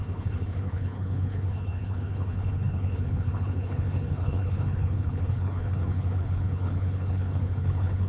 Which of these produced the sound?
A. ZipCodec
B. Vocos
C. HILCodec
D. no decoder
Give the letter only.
C